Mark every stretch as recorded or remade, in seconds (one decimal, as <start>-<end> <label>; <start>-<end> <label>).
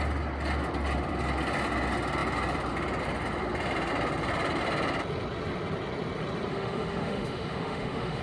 0.0-6.5 recorded; 6.5-8.2 remade